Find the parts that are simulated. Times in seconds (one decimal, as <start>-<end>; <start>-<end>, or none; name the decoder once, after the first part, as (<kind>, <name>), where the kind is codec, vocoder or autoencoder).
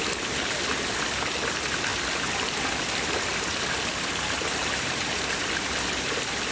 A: 1.9-2.8 (vocoder, BigVGAN v2); 3.3-5.0